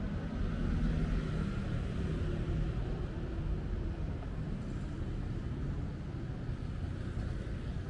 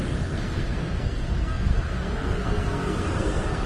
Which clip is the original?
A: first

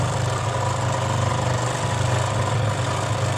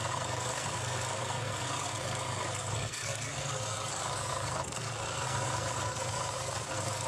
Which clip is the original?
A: first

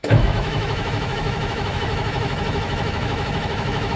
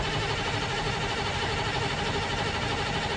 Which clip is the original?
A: second